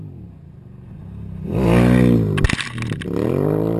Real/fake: real